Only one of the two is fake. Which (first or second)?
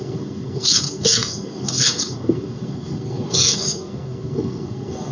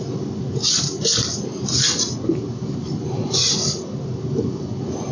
first